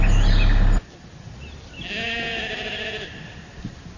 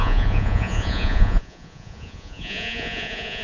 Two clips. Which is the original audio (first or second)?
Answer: first